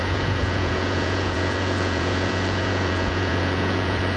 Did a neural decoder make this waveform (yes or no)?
yes